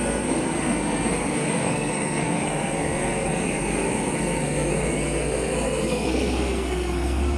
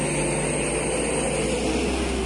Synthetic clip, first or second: first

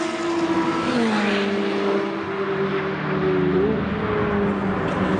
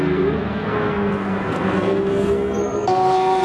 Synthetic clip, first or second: second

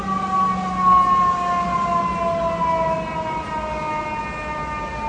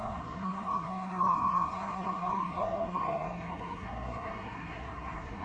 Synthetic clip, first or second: second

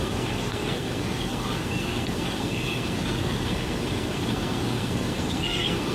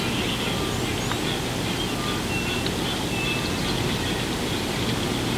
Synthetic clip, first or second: first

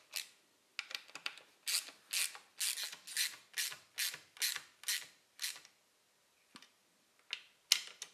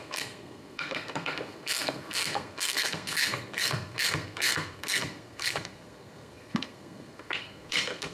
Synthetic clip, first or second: second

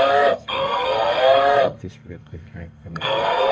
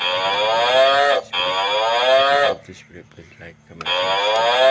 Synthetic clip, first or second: first